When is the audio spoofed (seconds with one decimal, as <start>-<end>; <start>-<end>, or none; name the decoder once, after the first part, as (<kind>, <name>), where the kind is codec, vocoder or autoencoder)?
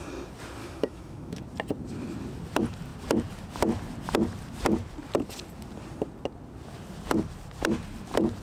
0.6-1.4 (autoencoder, DAC-VAE)